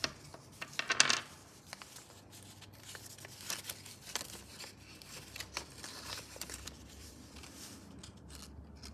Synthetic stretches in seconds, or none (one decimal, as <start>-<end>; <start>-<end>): 4.5-7.4